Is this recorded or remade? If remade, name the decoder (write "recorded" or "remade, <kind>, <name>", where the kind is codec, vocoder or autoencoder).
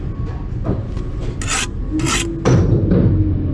recorded